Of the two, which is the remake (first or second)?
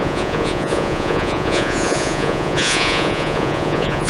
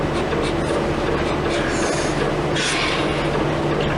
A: first